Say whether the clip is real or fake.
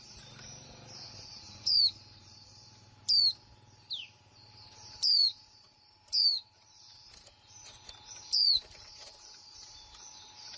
fake